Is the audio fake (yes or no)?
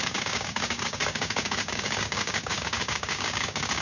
yes